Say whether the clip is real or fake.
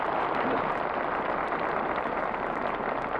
real